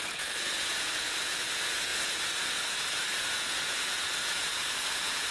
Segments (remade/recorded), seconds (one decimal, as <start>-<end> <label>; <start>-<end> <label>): 0.0-5.3 remade